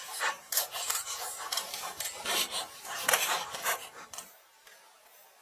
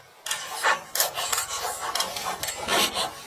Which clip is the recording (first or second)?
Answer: second